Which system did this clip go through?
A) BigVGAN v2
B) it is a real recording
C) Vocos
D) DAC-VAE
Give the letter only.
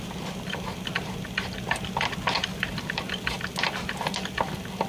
B